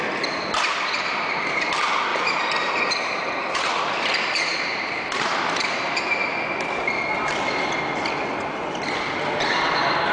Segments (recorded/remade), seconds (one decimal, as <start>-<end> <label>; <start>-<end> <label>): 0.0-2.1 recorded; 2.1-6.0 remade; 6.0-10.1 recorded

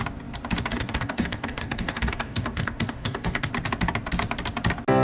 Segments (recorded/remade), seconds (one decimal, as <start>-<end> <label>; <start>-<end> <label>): 0.0-0.7 recorded; 0.7-3.5 remade; 3.5-5.0 recorded

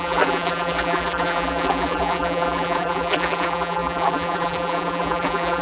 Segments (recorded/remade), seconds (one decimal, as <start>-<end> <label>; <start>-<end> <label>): 0.0-5.6 remade

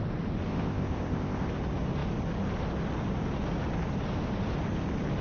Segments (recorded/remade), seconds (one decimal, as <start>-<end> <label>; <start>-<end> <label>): 0.0-0.5 recorded; 0.5-1.6 remade; 1.6-5.2 recorded

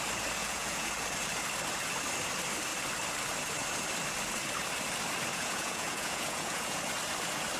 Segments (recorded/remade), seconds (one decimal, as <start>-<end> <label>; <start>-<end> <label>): 0.0-0.4 recorded; 0.4-0.9 remade; 0.9-5.3 recorded; 5.3-6.8 remade; 6.8-7.6 recorded

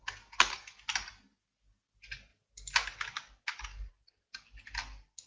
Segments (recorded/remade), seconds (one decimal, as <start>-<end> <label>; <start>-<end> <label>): 0.0-5.3 recorded

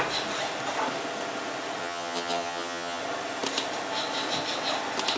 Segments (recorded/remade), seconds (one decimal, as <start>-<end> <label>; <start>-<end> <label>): 0.0-1.8 recorded; 1.8-3.0 remade; 3.0-5.2 recorded

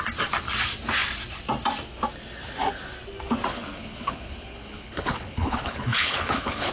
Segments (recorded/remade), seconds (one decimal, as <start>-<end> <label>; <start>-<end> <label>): 0.0-3.5 recorded; 3.5-6.7 remade